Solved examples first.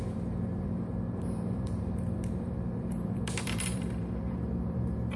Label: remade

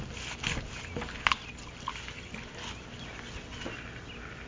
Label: recorded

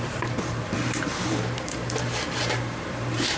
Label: remade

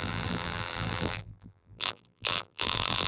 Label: remade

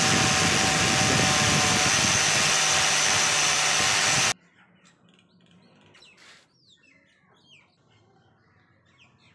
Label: recorded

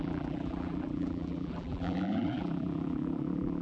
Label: remade